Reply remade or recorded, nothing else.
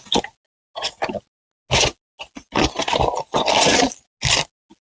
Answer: recorded